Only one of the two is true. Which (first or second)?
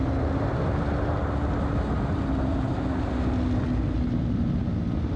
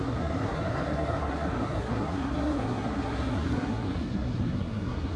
first